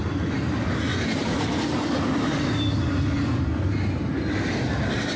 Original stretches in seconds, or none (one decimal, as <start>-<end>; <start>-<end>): 0.0-5.2